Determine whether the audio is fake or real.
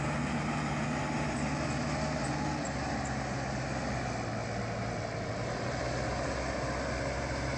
real